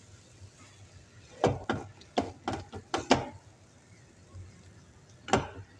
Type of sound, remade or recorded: recorded